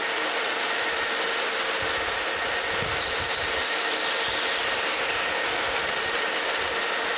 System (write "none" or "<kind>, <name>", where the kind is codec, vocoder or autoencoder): none